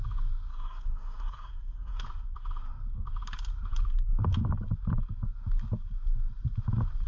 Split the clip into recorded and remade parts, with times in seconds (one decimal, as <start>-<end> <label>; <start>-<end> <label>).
0.0-0.5 recorded; 0.5-2.0 remade; 2.0-7.1 recorded